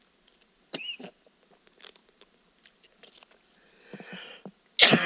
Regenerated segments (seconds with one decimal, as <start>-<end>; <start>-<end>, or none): none